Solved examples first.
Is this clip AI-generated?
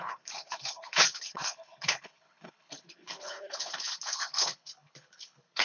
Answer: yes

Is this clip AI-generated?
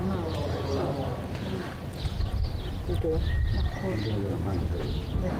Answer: no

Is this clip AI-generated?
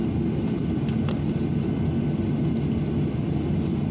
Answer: no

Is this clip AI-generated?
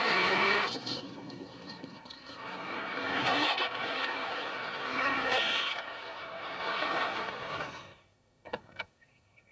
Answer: yes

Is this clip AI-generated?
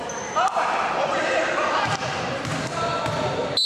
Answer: no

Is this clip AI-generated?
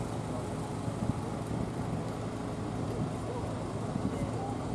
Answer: no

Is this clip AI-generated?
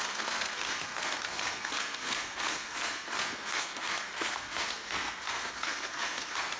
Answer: yes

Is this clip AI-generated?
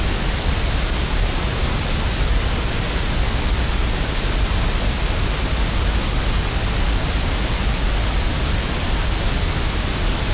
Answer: no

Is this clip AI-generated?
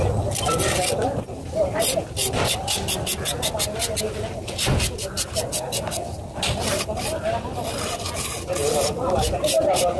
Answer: no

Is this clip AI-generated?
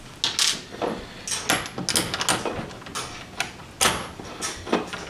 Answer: no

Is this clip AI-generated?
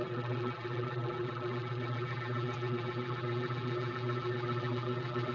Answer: yes